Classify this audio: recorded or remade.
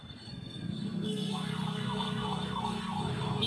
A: remade